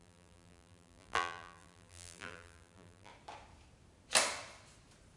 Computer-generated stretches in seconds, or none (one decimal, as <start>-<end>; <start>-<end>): 0.0-3.1